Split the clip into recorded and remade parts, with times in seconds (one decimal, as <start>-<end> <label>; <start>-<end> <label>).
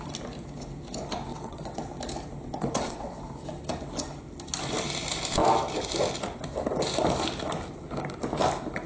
0.0-1.3 recorded; 1.3-1.9 remade; 1.9-2.5 recorded; 2.5-3.2 remade; 3.2-8.9 recorded